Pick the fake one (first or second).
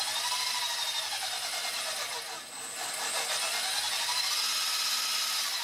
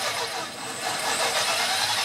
second